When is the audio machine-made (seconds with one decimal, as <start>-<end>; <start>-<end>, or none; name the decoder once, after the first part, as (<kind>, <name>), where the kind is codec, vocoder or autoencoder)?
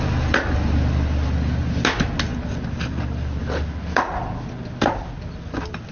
none